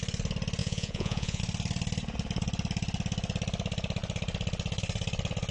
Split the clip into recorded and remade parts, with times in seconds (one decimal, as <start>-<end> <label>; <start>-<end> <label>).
0.0-0.6 recorded; 0.6-1.4 remade; 1.4-5.5 recorded